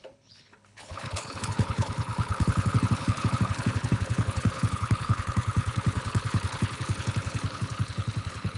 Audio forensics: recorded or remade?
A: remade